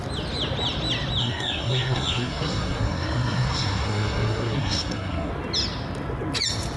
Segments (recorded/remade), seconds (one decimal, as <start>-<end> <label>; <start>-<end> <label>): 0.0-1.2 recorded; 1.2-5.3 remade; 5.3-6.8 recorded